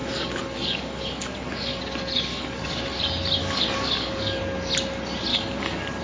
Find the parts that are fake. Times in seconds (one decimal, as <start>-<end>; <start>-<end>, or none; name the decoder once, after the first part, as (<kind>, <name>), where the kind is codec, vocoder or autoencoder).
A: 0.0-1.8 (codec, DAC); 2.3-3.0; 3.4-4.4; 5.3-6.0